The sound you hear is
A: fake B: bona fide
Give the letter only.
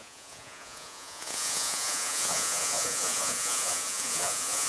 A